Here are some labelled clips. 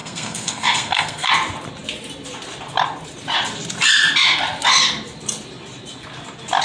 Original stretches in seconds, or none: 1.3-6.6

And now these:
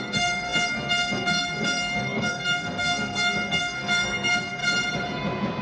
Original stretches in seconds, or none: 4.6-5.6